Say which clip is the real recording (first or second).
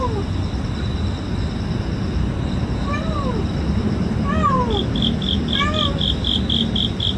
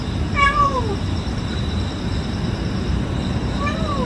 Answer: first